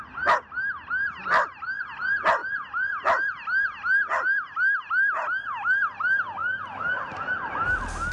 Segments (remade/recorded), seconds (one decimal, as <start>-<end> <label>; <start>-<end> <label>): 0.0-8.1 recorded